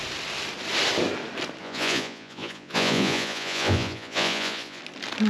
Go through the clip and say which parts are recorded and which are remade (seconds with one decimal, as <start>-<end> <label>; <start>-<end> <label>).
0.0-1.6 recorded; 1.6-4.8 remade; 4.8-5.3 recorded

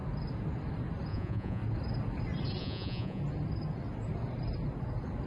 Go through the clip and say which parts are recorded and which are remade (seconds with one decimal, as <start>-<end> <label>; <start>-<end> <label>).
0.0-1.1 recorded; 1.1-1.6 remade; 1.6-2.6 recorded; 2.6-3.2 remade; 3.2-5.3 recorded